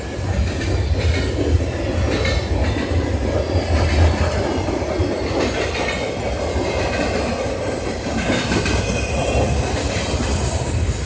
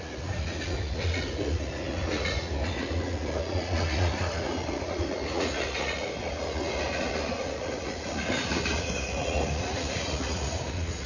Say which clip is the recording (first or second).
first